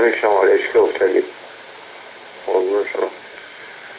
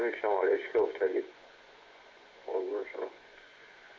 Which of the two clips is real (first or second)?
first